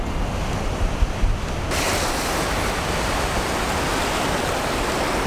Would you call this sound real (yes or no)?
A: yes